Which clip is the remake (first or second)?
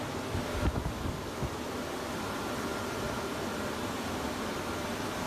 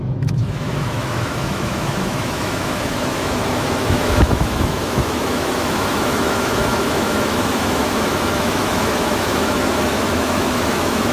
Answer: second